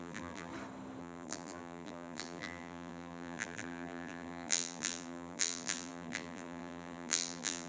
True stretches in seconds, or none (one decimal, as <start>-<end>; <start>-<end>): 0.5-1.0